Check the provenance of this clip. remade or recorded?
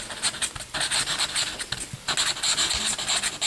recorded